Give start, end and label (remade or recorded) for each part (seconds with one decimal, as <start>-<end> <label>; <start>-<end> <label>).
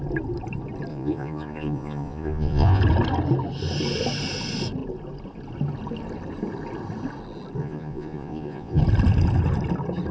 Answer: 0.0-0.9 recorded; 0.9-2.8 remade; 2.8-7.6 recorded; 7.6-8.8 remade; 8.8-10.1 recorded